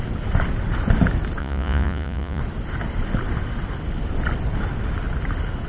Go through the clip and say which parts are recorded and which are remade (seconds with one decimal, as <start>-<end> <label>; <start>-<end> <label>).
0.0-1.4 recorded; 1.4-2.4 remade; 2.4-5.7 recorded